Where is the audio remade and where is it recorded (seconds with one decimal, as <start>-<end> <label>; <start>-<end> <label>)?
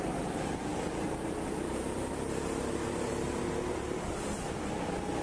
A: 0.0-0.7 remade; 0.7-3.7 recorded; 3.7-5.2 remade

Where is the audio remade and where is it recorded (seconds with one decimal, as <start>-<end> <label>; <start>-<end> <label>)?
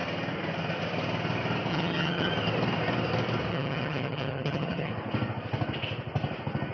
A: 0.0-1.7 recorded; 1.7-2.3 remade; 2.3-3.5 recorded; 3.5-4.9 remade; 4.9-6.7 recorded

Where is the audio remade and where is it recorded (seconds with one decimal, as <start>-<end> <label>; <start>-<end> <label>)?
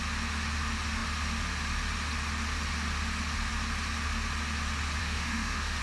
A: 0.0-5.0 recorded; 5.0-5.8 remade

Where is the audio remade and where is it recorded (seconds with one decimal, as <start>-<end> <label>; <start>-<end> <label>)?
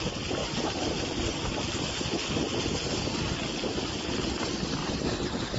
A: 0.0-0.4 recorded; 0.4-1.0 remade; 1.0-4.8 recorded; 4.8-5.6 remade